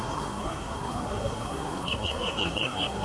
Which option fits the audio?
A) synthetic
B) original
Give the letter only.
A